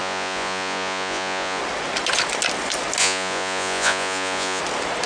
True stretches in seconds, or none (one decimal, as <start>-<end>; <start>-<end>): 1.6-3.0; 4.6-5.1